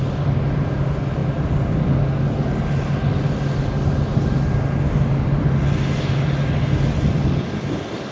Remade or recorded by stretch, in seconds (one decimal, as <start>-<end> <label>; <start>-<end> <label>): 0.0-8.1 recorded